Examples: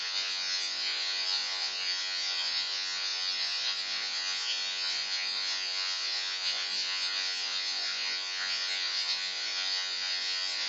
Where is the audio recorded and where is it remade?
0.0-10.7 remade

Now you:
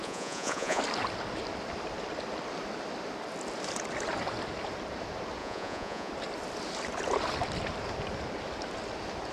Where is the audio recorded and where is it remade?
0.0-0.8 remade; 0.8-5.4 recorded; 5.4-6.1 remade; 6.1-9.3 recorded